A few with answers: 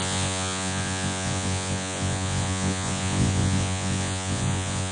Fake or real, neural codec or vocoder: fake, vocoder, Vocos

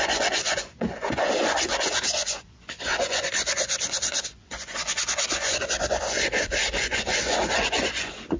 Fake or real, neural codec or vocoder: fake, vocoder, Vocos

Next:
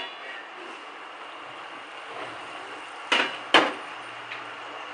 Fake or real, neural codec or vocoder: real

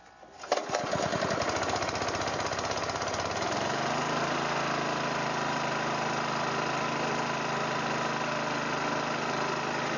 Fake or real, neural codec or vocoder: real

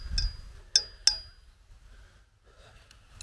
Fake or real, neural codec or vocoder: real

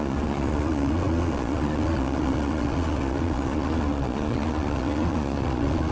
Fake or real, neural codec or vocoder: fake, vocoder, Vocos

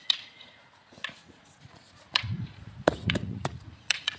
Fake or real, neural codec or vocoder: fake, vocoder, Vocos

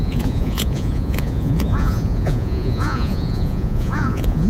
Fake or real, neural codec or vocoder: fake, vocoder, Vocos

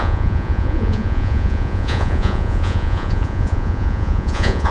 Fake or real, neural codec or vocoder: fake, vocoder, Vocos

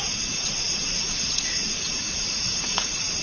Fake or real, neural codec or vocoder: fake, vocoder, Vocos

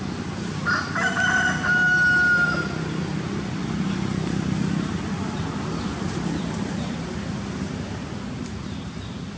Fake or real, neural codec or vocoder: real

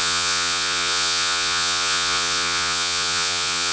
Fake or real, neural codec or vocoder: fake, vocoder, Vocos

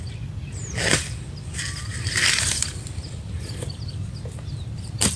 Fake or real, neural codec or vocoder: real